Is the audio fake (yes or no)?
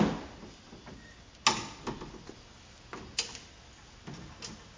no